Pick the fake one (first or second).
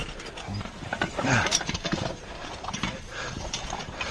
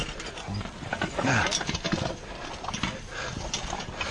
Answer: first